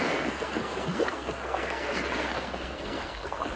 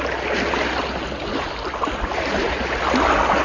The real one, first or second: second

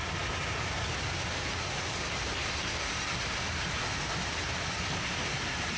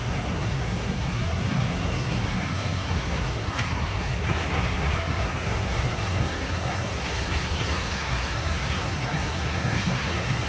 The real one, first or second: first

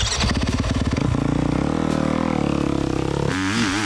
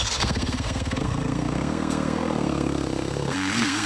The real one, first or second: first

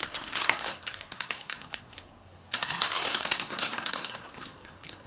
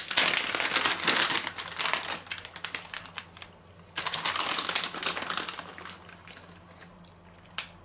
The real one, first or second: second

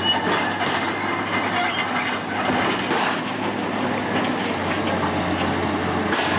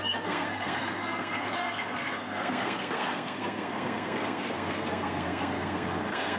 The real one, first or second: first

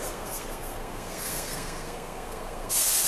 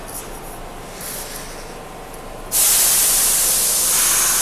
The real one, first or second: second